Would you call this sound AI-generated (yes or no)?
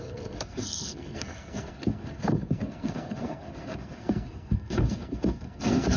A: yes